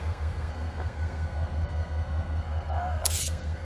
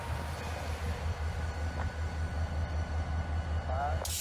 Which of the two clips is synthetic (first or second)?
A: first